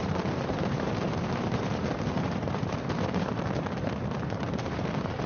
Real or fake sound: fake